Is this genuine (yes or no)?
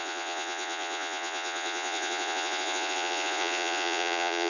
no